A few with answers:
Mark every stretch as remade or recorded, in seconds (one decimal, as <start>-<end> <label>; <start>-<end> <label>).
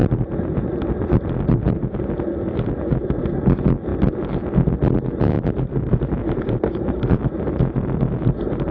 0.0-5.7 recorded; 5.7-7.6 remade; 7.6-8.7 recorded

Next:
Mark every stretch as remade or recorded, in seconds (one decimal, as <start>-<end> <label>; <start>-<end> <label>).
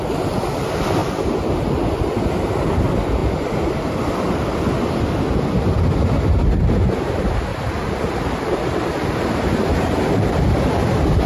0.0-1.0 recorded; 1.0-1.9 remade; 1.9-7.5 recorded; 7.5-11.3 remade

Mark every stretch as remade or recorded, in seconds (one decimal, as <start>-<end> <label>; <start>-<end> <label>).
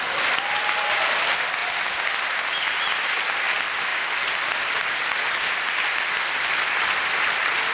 0.0-7.7 recorded